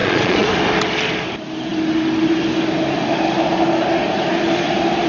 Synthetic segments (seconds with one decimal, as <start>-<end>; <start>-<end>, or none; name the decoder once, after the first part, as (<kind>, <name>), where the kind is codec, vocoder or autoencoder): 0.0-0.5 (vocoder, Vocos)